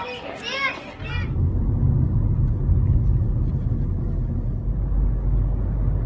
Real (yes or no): yes